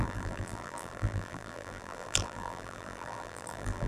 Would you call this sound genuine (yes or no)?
no